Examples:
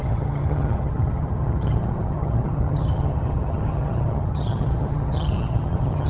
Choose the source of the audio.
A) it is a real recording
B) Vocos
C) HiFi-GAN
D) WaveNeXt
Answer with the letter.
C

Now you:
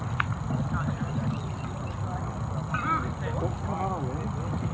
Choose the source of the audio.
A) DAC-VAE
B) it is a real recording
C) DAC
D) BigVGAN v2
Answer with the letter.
B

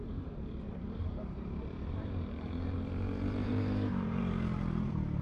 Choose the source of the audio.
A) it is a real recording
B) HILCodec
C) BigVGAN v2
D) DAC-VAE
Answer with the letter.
C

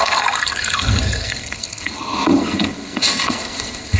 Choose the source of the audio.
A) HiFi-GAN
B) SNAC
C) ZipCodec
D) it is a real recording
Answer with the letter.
B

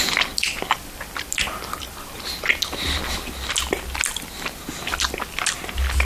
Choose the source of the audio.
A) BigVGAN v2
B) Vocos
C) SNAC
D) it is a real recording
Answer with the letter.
D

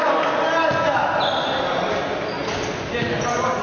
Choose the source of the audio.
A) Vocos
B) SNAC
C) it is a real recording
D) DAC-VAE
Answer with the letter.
C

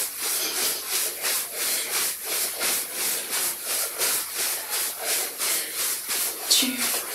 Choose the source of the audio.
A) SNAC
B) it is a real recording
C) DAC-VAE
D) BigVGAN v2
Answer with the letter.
B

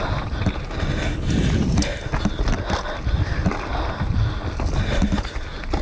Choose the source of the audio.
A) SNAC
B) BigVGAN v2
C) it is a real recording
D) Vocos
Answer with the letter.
C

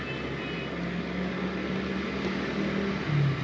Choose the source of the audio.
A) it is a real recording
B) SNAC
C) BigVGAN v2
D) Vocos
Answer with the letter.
A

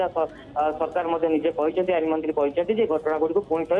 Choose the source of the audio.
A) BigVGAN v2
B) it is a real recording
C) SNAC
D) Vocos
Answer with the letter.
B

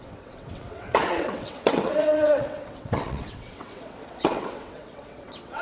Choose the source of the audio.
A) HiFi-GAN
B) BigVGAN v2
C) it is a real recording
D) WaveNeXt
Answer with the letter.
D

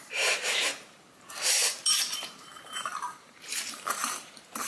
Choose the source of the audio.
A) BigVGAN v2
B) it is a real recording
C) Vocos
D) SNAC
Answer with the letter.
A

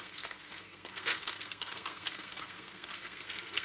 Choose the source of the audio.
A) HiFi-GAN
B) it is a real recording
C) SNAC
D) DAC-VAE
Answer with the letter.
C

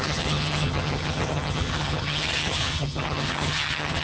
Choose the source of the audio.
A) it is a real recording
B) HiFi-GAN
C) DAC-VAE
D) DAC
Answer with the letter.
B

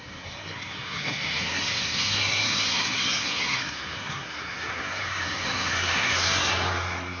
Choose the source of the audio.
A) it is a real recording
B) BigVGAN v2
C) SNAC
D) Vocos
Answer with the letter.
C